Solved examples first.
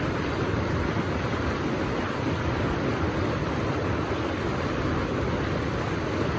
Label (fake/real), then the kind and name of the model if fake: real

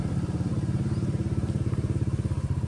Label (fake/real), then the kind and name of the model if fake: fake, vocoder, BigVGAN v2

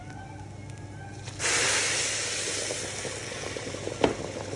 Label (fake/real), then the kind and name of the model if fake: real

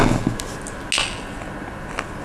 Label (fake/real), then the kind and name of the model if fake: real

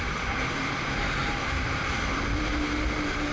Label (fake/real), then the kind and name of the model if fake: fake, vocoder, BigVGAN v2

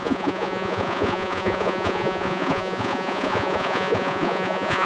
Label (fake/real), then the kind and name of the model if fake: fake, vocoder, Vocos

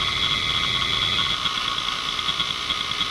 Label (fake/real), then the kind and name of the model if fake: real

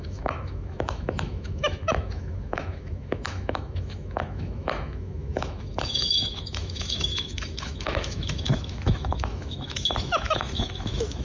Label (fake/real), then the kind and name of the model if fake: fake, autoencoder, DAC-VAE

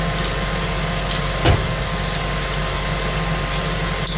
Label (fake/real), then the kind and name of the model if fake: real